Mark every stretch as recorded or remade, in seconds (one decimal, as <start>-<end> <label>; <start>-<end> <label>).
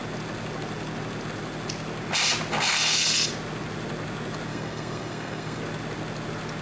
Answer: 0.0-2.7 recorded; 2.7-3.3 remade; 3.3-4.5 recorded; 4.5-5.6 remade; 5.6-6.6 recorded